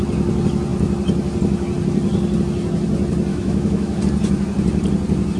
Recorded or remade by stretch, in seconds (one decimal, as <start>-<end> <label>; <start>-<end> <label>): 0.0-3.3 recorded; 3.3-4.0 remade; 4.0-5.4 recorded